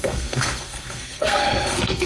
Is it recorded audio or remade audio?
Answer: remade